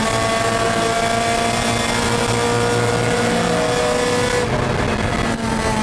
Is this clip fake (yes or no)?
no